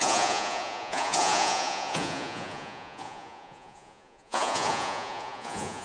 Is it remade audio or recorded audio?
remade